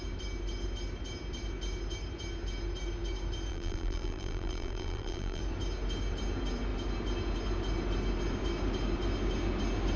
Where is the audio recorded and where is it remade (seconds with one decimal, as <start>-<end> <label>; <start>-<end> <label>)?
0.0-3.5 recorded; 3.5-5.4 remade; 5.4-10.0 recorded